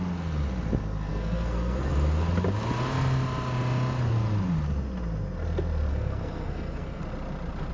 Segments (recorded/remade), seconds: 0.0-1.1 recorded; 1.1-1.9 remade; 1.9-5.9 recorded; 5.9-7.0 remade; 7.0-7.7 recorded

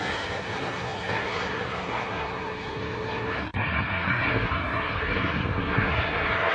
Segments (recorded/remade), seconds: 0.0-6.5 remade

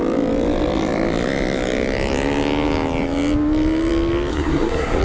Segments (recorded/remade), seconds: 0.0-4.3 recorded; 4.3-5.0 remade

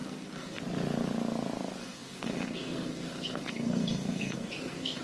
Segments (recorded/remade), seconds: 0.0-0.6 remade; 0.6-1.8 recorded; 1.8-5.0 remade